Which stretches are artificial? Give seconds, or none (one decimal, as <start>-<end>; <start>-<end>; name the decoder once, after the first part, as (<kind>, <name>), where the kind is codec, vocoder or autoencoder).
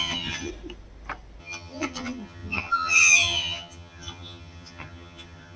0.0-0.5 (vocoder, HiFi-GAN); 1.4-5.6